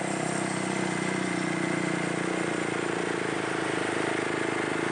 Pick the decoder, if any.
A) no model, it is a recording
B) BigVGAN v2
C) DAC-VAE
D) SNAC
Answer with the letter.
A